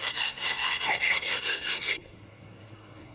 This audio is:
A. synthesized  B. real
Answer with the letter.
A